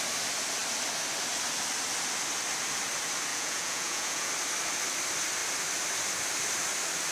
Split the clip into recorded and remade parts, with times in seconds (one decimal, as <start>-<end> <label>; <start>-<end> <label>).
0.0-3.3 recorded; 3.3-4.3 remade; 4.3-7.1 recorded